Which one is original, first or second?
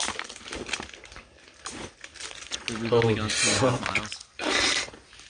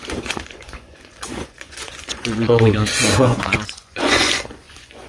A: first